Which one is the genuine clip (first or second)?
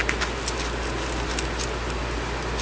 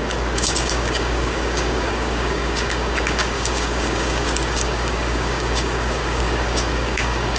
first